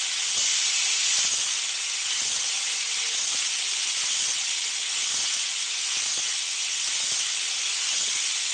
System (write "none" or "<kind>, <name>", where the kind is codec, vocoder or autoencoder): vocoder, WaveNeXt